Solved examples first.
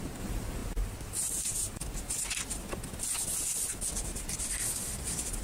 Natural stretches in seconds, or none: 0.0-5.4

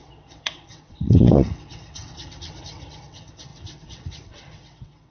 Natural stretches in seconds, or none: none

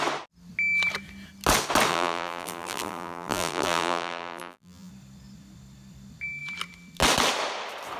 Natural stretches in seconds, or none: 0.0-1.9; 4.9-8.0

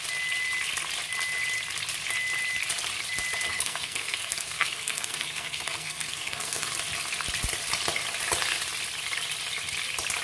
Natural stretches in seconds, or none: 0.0-3.5; 6.7-10.2